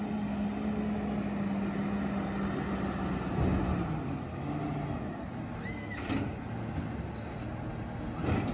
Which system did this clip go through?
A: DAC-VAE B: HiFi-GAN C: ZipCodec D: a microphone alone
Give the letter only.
D